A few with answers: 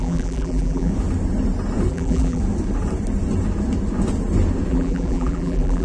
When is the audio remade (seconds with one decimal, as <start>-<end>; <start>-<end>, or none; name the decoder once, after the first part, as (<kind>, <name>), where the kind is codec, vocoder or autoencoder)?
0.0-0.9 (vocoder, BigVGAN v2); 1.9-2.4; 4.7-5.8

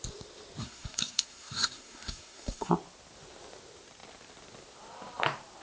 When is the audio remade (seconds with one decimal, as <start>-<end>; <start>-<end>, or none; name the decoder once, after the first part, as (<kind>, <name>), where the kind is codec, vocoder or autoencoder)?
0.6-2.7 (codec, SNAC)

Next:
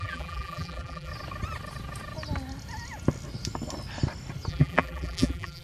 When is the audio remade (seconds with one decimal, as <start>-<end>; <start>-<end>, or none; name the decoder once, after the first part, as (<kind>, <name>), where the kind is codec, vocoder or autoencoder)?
0.0-1.1 (vocoder, BigVGAN v2); 4.5-5.6

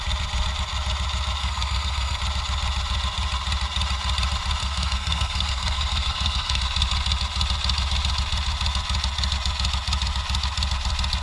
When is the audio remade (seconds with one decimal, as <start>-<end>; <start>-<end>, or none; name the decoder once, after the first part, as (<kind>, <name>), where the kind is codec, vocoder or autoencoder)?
1.4-2.2 (codec, SNAC); 4.6-6.6

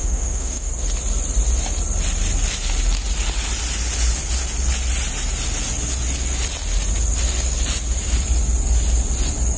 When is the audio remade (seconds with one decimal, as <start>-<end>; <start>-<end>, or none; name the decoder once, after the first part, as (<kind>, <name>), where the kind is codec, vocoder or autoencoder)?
0.0-0.7 (autoencoder, DAC-VAE)